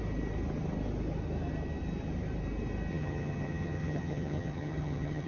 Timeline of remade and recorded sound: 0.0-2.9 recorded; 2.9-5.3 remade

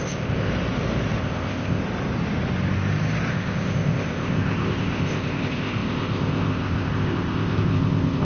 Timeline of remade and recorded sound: 0.0-0.5 remade; 0.5-1.2 recorded; 1.2-1.8 remade; 1.8-3.3 recorded; 3.3-8.2 remade

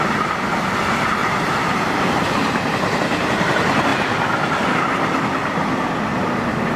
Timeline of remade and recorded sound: 0.0-1.2 recorded; 1.2-2.7 remade; 2.7-6.8 recorded

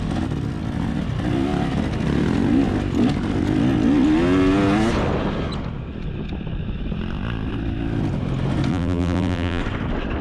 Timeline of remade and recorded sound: 0.0-8.7 recorded; 8.7-9.6 remade; 9.6-10.2 recorded

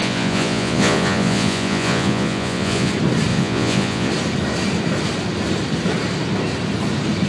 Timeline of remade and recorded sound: 0.0-2.9 remade; 2.9-3.3 recorded; 3.3-4.1 remade; 4.1-7.3 recorded

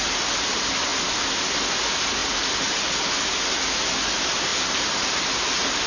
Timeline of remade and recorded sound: 0.0-5.9 recorded